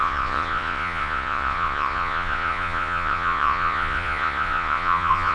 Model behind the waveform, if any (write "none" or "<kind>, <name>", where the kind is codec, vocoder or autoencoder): vocoder, Vocos